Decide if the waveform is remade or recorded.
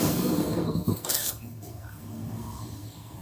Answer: remade